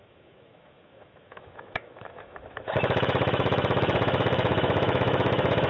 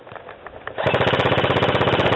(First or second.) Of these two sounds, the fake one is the first